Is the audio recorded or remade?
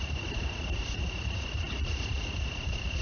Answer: remade